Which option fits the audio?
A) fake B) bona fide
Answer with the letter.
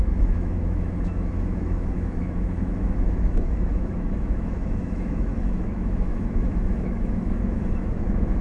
A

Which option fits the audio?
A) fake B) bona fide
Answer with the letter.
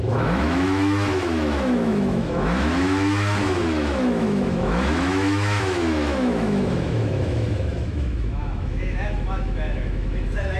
A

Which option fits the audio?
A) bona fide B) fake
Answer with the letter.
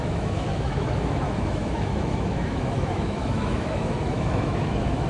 B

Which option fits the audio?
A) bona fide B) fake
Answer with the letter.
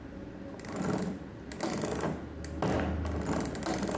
A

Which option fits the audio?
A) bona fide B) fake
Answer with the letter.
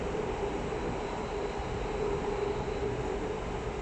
A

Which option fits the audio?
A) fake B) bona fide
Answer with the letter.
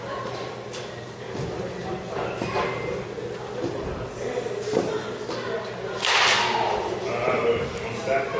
B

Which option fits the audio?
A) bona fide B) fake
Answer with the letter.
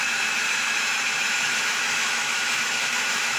B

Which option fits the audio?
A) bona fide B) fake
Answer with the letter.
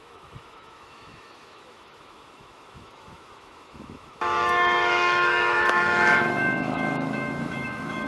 B